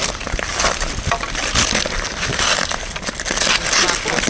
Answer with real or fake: real